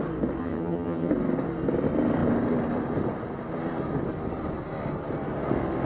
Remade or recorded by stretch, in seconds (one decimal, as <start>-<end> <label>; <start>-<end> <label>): 0.0-0.4 recorded; 0.4-1.1 remade; 1.1-5.8 recorded